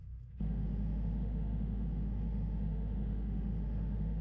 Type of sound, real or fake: fake